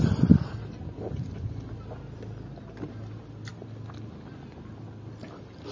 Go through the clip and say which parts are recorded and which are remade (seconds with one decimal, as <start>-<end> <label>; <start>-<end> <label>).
0.0-5.7 recorded